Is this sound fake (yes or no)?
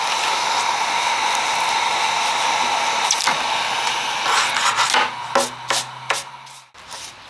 no